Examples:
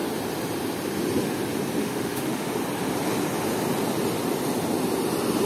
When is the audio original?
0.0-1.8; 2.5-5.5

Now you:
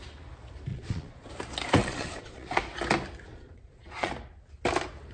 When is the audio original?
0.0-0.7; 1.3-1.8; 2.6-3.3; 4.1-5.1